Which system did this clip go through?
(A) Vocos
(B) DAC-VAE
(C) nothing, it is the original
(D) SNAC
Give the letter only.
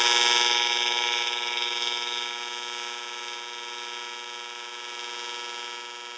C